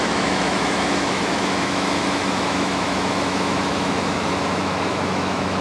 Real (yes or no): no